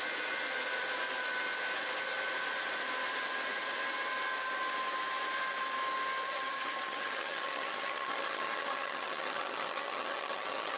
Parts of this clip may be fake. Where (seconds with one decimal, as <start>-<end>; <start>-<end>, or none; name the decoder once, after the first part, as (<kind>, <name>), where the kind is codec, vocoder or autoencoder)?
6.2-10.8 (vocoder, HiFi-GAN)